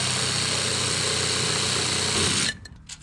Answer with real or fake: real